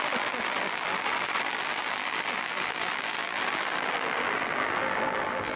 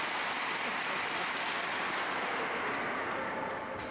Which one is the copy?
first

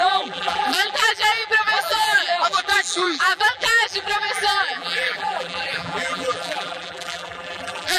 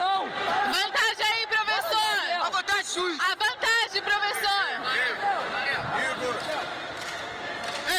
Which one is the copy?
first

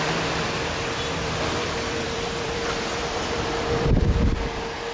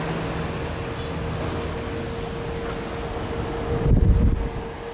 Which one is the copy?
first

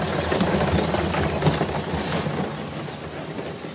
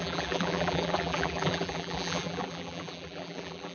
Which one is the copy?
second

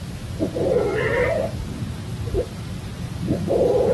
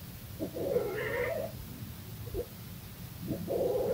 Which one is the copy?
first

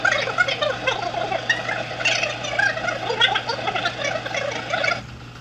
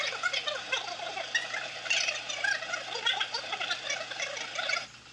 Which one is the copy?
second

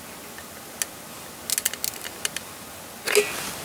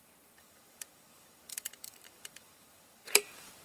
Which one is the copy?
second